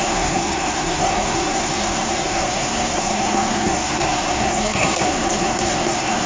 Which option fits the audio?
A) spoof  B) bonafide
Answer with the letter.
A